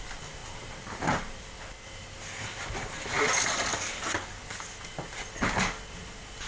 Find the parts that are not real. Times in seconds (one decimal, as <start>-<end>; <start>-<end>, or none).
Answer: 0.4-1.4